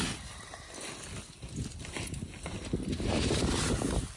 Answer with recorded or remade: recorded